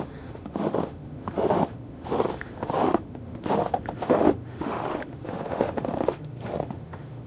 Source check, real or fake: fake